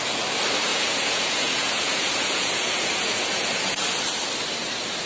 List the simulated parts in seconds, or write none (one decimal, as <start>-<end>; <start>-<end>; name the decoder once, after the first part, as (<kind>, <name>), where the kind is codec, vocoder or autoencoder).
0.7-3.8 (vocoder, Vocos)